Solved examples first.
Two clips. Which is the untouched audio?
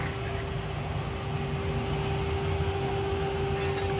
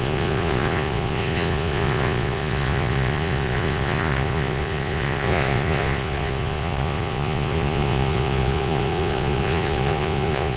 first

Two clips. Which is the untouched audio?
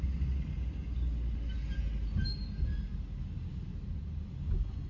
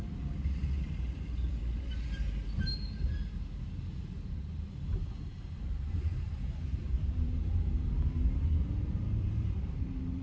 first